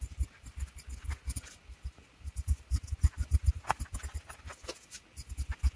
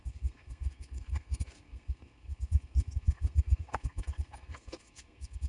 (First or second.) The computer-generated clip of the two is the second